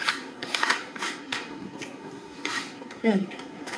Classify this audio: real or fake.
fake